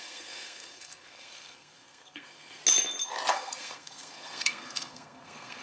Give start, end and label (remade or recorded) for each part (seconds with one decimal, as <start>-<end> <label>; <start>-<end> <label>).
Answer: 0.0-2.6 remade; 2.6-3.3 recorded; 3.3-5.6 remade